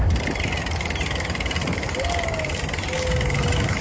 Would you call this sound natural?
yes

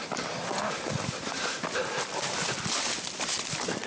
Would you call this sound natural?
yes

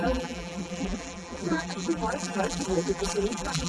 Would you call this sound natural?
no